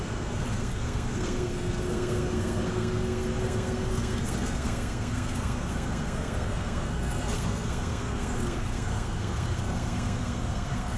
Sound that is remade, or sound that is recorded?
remade